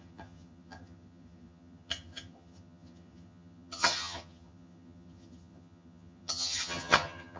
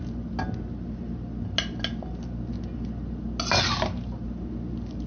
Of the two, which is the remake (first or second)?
first